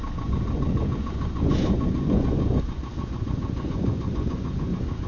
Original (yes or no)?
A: no